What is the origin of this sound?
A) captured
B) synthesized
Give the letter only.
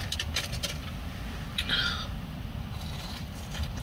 A